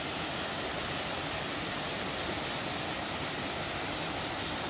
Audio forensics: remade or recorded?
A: recorded